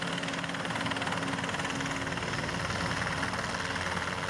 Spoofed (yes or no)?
no